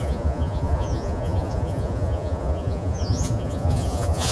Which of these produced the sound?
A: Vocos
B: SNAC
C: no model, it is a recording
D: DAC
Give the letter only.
A